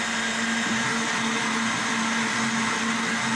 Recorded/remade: recorded